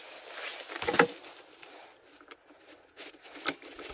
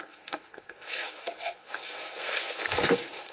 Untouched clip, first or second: first